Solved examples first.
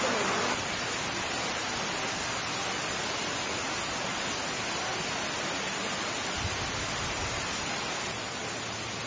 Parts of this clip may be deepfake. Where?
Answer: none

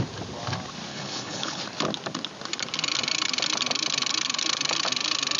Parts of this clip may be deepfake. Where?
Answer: 0.9-1.6

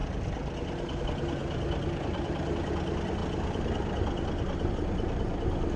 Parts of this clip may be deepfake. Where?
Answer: none